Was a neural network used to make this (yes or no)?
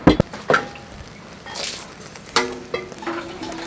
no